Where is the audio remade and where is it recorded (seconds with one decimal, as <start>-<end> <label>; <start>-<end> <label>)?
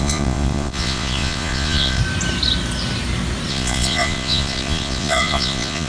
0.0-2.0 remade; 2.0-3.5 recorded; 3.5-5.9 remade